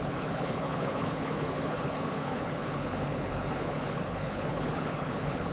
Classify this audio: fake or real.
fake